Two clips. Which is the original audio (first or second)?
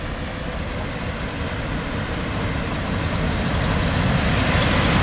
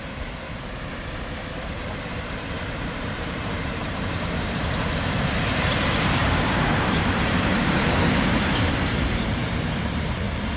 first